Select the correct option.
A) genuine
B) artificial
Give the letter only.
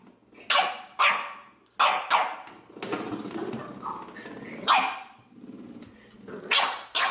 A